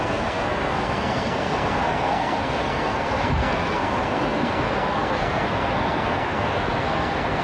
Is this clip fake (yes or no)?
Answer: yes